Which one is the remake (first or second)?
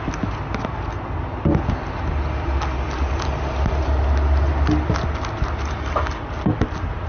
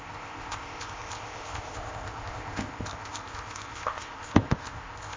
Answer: second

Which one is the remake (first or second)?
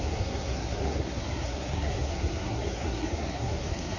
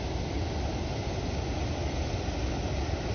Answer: first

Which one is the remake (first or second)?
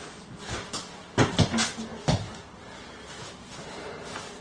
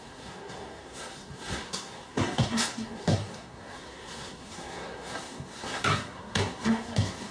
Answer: second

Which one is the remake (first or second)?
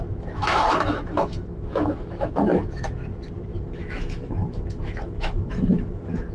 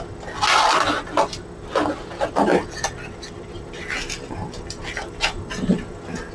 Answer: first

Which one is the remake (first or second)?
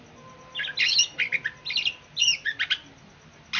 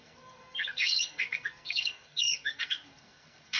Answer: second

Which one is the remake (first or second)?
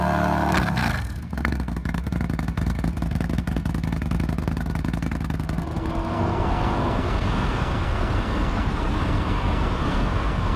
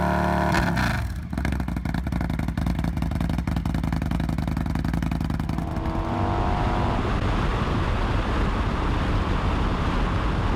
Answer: first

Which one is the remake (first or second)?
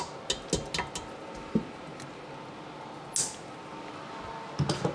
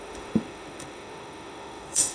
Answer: second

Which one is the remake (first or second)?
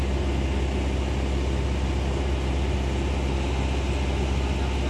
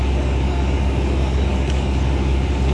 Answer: second